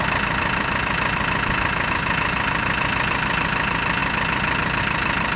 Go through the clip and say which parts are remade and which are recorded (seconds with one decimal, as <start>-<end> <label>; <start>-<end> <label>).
0.0-5.4 recorded

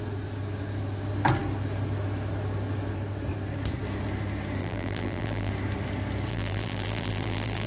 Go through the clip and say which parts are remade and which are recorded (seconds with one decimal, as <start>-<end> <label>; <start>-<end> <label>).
0.0-4.6 recorded; 4.6-5.5 remade; 5.5-6.3 recorded; 6.3-7.7 remade